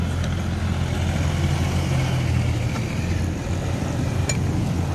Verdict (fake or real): real